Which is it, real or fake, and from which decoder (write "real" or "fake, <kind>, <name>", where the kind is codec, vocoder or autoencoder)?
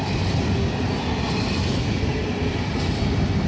real